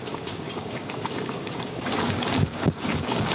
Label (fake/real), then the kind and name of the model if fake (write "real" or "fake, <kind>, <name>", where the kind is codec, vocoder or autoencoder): fake, codec, DAC